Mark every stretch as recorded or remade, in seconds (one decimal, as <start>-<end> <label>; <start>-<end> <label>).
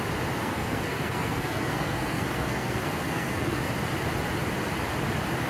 0.0-0.4 recorded; 0.4-3.7 remade; 3.7-5.5 recorded